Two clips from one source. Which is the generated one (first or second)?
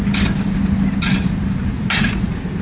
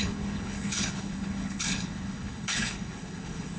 second